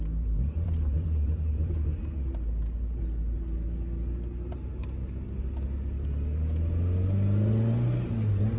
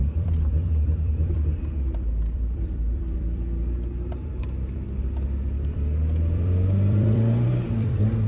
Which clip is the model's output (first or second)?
second